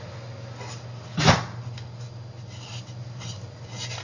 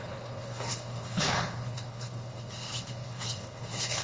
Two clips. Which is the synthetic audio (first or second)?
second